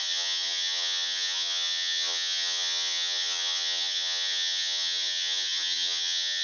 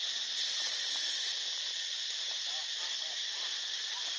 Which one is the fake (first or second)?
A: first